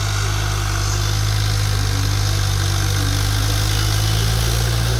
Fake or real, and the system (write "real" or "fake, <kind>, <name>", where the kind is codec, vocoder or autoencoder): real